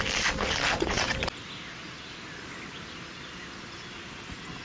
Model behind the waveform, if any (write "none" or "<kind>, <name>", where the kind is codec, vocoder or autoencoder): none